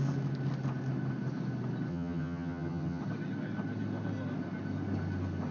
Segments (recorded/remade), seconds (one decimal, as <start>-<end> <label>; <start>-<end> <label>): 0.0-1.9 recorded; 1.9-3.0 remade; 3.0-5.5 recorded